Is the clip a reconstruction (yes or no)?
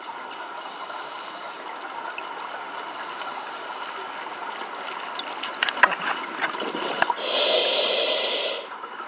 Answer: no